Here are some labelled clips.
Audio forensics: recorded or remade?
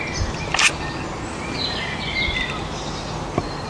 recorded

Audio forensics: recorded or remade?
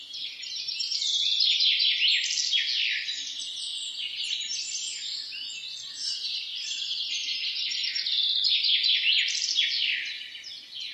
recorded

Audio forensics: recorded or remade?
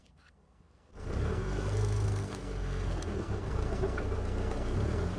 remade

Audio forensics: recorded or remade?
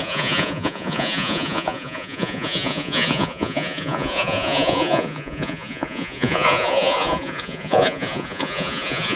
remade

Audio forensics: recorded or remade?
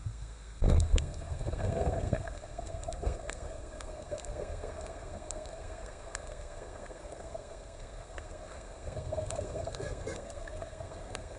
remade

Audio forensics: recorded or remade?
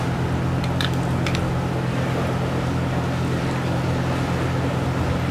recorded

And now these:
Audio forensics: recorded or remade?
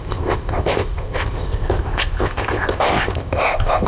remade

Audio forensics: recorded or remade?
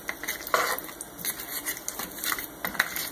recorded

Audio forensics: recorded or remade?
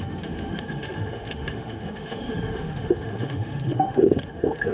remade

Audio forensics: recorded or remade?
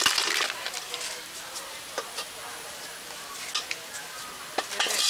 recorded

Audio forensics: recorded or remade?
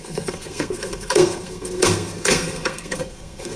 remade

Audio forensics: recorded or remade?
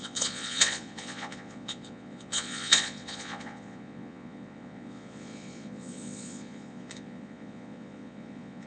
remade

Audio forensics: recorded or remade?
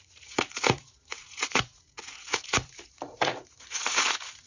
remade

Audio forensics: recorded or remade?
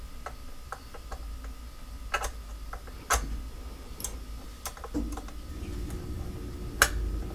recorded